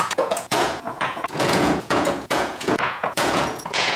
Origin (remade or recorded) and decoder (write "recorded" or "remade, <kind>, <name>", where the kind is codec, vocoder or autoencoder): remade, vocoder, Vocos